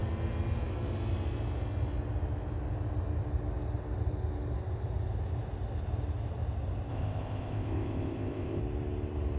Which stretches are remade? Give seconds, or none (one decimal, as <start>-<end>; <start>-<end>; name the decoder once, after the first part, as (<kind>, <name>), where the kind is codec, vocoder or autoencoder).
6.9-8.6 (codec, ZipCodec)